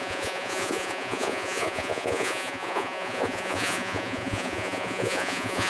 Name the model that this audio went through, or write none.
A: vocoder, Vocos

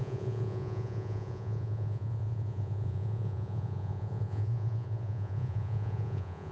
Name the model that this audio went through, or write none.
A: vocoder, Vocos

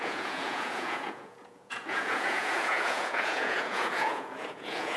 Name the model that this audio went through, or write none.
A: vocoder, Vocos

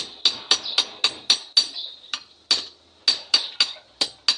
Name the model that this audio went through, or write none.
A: none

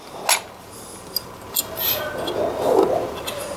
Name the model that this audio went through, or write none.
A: none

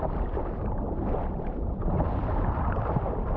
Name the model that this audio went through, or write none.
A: none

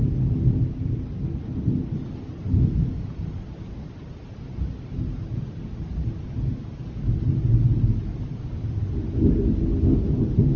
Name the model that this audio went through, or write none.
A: none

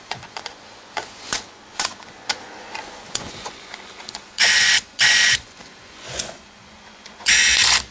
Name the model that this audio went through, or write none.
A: vocoder, Vocos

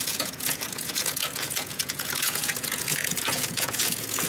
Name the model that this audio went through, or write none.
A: vocoder, Vocos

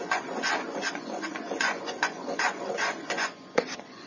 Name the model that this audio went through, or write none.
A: vocoder, Vocos